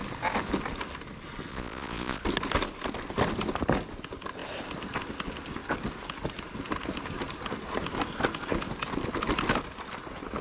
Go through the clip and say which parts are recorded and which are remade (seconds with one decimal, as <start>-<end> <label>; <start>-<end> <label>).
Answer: 0.0-1.5 recorded; 1.5-2.2 remade; 2.2-10.4 recorded

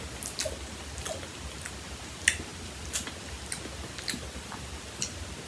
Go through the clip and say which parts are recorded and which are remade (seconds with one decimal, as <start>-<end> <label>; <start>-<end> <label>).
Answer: 0.0-5.5 recorded

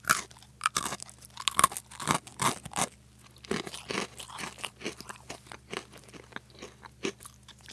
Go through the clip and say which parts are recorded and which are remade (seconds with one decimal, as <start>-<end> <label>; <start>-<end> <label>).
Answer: 0.0-7.7 recorded

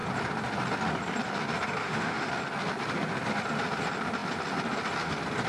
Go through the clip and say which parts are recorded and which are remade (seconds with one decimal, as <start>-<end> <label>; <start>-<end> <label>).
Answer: 0.0-1.8 recorded; 1.8-2.3 remade; 2.3-5.5 recorded

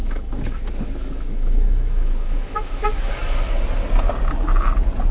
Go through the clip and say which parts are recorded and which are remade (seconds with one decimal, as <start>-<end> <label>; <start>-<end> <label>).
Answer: 0.0-3.1 remade; 3.1-5.1 recorded

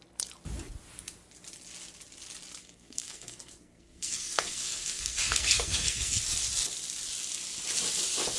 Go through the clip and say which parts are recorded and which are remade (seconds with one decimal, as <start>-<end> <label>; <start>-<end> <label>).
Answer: 0.0-2.6 recorded; 2.6-6.2 remade; 6.2-8.4 recorded

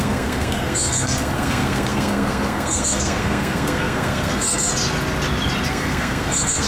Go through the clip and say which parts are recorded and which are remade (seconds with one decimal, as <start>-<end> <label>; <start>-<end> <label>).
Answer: 0.0-4.7 remade; 4.7-5.7 recorded; 5.7-6.7 remade